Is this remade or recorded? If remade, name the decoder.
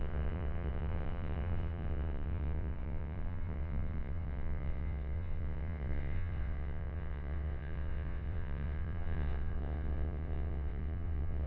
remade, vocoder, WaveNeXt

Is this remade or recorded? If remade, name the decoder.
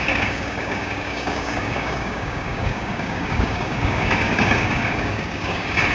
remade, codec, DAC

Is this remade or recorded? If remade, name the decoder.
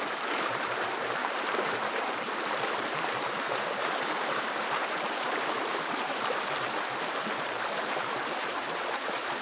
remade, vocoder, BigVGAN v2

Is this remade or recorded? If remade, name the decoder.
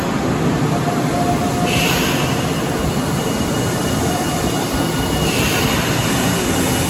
recorded